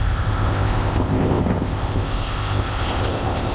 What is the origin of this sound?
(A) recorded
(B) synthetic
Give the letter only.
B